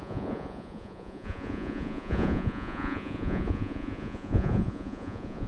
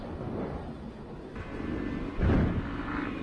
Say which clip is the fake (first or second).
first